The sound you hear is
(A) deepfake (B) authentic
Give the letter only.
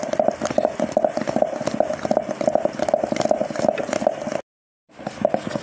B